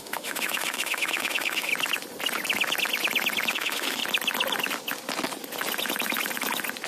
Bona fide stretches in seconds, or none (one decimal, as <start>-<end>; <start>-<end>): 1.7-3.5; 4.0-6.9

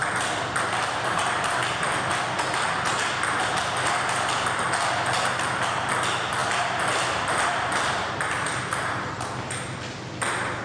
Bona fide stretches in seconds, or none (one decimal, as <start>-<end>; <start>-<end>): 0.0-10.6

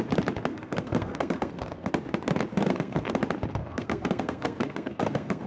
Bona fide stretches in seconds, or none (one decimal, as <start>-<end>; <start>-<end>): 0.0-0.5; 1.9-2.5; 3.1-3.6

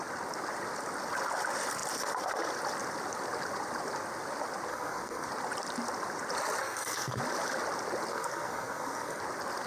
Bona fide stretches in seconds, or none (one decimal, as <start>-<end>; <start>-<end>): 0.0-4.7; 5.3-6.6; 7.2-8.1; 9.2-9.7